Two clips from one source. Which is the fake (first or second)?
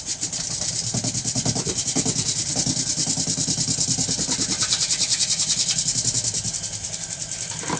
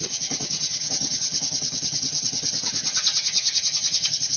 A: second